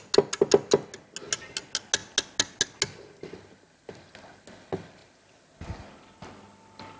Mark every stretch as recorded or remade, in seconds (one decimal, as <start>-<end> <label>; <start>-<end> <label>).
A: 0.0-7.0 recorded